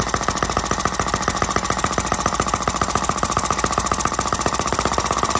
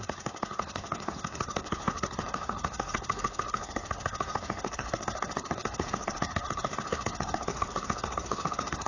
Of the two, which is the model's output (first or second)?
second